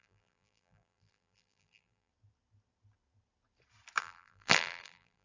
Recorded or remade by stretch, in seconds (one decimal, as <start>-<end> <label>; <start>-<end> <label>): 0.0-2.1 remade; 2.1-4.0 recorded; 4.0-5.2 remade